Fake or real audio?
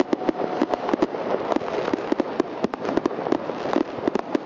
real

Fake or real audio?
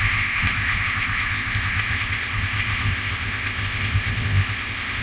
fake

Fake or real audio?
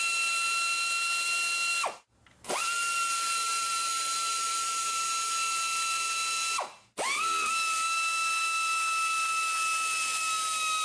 real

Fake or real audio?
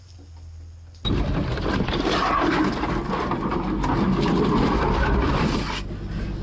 real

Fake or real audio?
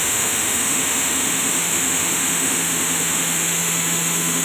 fake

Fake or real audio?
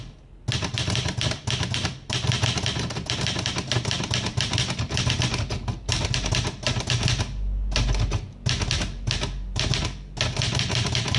real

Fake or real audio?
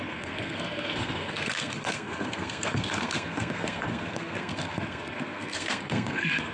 fake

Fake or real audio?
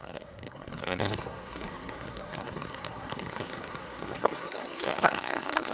fake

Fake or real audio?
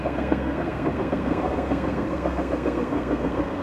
fake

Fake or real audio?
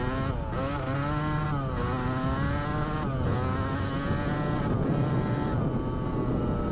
real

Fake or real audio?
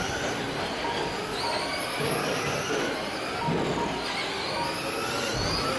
real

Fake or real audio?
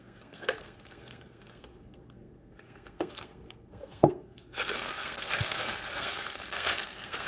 fake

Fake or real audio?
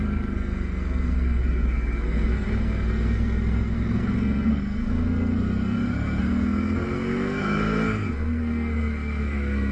fake